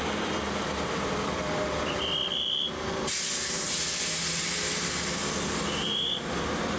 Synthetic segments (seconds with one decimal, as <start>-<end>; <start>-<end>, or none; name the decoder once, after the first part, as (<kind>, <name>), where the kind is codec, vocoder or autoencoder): 0.0-2.2 (vocoder, BigVGAN v2); 6.3-6.8